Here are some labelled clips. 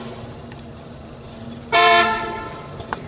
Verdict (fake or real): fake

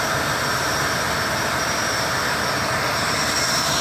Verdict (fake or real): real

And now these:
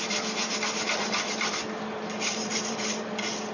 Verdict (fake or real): fake